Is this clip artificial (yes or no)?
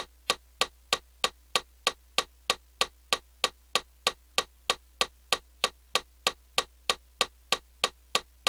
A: no